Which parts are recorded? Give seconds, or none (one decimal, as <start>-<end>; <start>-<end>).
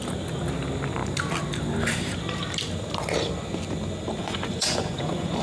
0.0-4.2